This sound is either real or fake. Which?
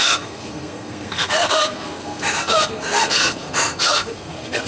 fake